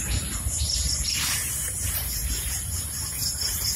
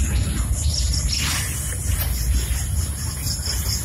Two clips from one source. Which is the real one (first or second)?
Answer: second